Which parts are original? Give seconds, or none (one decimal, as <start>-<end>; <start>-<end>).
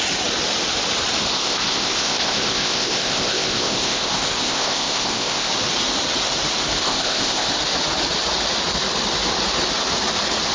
0.0-1.3; 5.5-6.8; 7.5-10.5